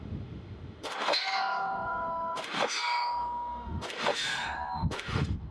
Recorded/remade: remade